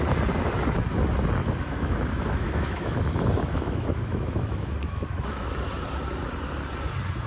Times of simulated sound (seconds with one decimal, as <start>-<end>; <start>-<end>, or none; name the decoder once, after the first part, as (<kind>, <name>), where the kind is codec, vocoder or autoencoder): 1.4-5.5 (autoencoder, DAC-VAE)